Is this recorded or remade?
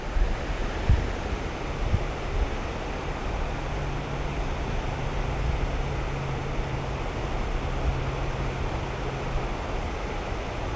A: recorded